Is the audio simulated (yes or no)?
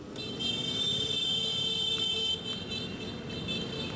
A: no